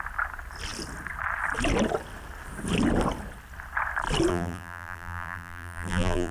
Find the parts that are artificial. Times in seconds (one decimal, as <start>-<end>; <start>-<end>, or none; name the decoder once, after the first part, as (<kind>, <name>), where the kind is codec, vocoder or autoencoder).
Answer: 4.3-6.3 (vocoder, BigVGAN v2)